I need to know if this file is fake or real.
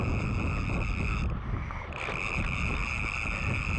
real